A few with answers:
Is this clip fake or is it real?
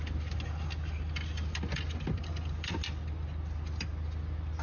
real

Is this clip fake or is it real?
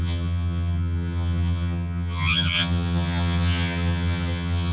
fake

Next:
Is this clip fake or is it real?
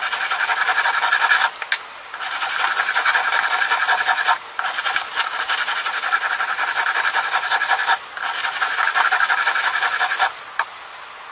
real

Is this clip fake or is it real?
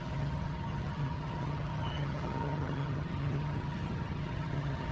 fake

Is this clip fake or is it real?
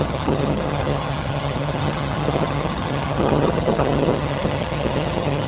fake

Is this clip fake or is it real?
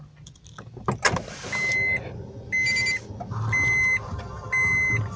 real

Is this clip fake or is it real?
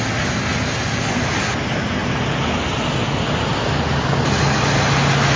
real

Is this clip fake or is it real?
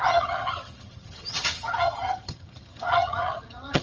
fake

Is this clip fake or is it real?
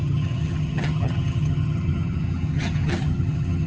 fake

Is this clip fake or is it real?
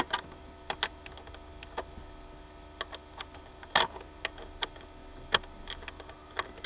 real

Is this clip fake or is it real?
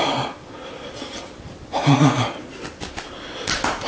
real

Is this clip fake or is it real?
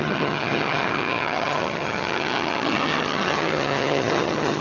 fake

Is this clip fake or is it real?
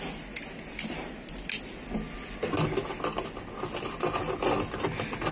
real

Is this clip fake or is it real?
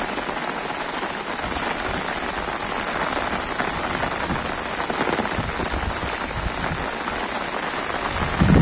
real